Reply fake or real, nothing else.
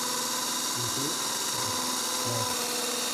real